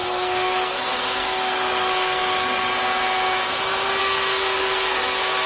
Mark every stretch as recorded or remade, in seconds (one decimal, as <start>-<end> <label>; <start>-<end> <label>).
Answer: 0.0-2.7 remade; 2.7-4.0 recorded; 4.0-5.5 remade